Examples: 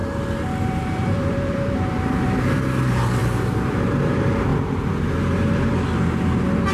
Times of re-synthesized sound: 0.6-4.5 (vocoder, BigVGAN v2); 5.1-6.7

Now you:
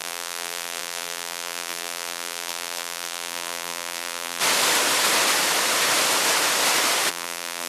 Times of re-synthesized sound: 0.0-4.4 (vocoder, BigVGAN v2); 7.1-7.7

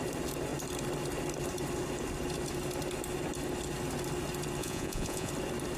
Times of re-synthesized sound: 4.6-5.3 (vocoder, Vocos)

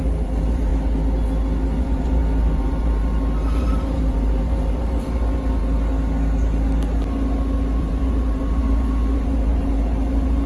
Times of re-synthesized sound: 0.0-0.7 (vocoder, BigVGAN v2); 1.8-5.6; 7.8-10.5

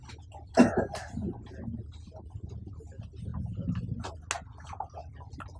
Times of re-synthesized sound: none

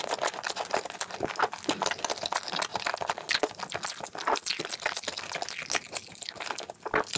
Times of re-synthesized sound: none